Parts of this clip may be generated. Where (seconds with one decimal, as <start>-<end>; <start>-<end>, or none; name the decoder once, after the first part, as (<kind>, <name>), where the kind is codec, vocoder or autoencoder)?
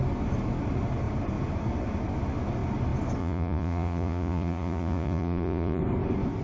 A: 3.2-5.8 (vocoder, Vocos)